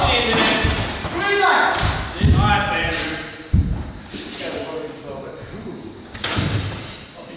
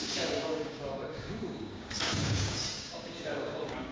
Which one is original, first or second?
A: first